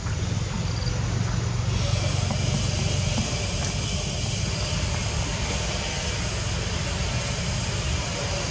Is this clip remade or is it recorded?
recorded